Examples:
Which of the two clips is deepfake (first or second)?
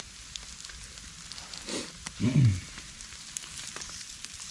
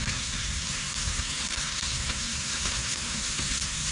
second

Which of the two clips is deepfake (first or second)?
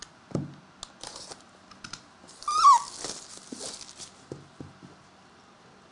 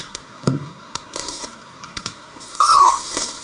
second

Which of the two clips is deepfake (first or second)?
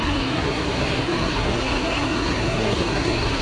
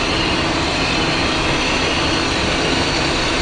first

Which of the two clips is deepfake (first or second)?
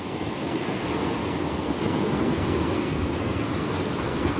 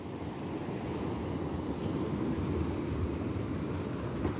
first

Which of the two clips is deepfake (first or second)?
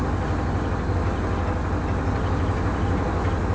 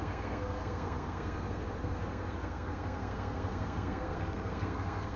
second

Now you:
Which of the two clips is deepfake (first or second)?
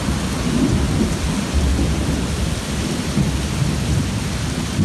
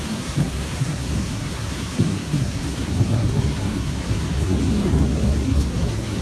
second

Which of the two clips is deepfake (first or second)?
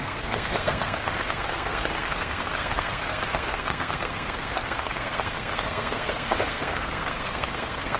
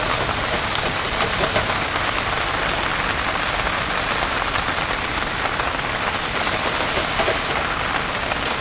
first